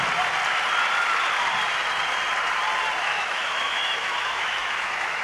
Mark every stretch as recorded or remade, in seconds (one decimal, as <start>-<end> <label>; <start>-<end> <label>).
0.0-3.0 recorded; 3.0-5.2 remade